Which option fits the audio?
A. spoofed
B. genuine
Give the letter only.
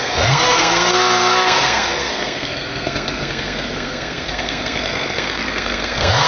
A